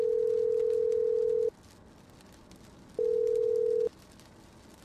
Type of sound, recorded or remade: recorded